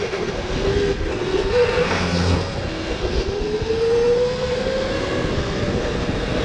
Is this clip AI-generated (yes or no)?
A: yes